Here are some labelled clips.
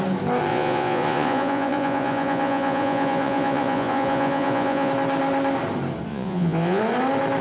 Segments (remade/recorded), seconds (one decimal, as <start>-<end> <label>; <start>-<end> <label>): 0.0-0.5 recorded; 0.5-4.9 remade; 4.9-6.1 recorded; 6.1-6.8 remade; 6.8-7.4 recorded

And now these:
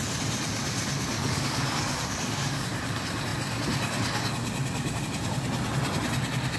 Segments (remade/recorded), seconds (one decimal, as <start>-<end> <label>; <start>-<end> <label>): 0.0-1.2 recorded; 1.2-2.6 remade; 2.6-6.6 recorded

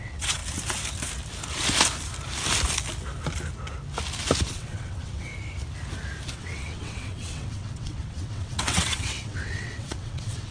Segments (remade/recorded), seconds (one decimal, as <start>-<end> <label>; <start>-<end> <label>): 0.0-0.4 remade; 0.4-4.5 recorded; 4.5-5.3 remade; 5.3-6.3 recorded; 6.3-10.5 remade